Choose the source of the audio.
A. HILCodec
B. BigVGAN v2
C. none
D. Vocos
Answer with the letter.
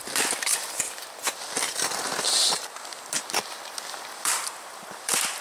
B